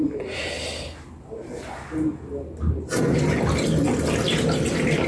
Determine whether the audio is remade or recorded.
recorded